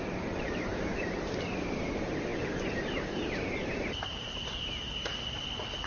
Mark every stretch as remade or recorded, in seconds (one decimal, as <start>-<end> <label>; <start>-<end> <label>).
0.0-5.1 remade; 5.1-5.9 recorded